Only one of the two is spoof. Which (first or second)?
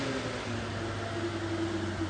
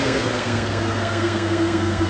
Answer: second